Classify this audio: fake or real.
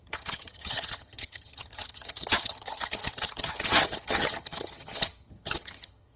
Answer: fake